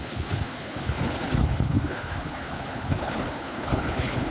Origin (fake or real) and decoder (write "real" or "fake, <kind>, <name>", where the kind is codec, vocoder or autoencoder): fake, codec, HILCodec